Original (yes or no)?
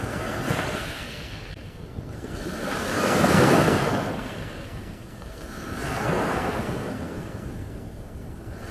no